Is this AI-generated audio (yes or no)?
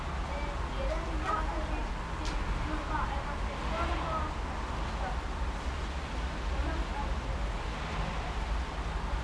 no